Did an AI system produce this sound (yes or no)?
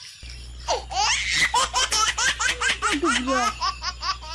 no